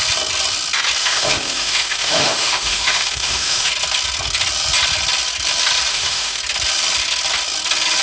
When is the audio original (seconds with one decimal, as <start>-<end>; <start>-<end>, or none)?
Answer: 0.0-1.0; 3.7-5.9; 6.4-8.0